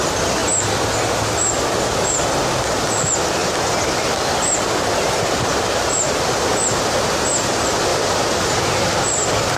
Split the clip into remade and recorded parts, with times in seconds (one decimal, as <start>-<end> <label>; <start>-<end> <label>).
0.0-9.6 recorded